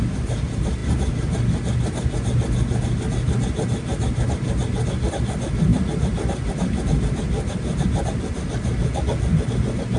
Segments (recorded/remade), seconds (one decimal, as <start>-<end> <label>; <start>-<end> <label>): 0.0-10.0 recorded